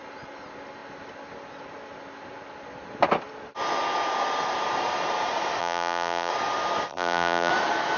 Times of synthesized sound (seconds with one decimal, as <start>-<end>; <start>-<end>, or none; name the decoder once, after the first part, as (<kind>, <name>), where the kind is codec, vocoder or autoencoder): 5.6-6.3 (vocoder, BigVGAN v2); 6.9-7.5